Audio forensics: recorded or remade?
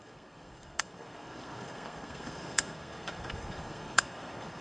remade